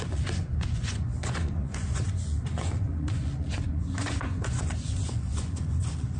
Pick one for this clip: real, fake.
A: fake